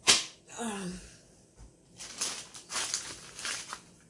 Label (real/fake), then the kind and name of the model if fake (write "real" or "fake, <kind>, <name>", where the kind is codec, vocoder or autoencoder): real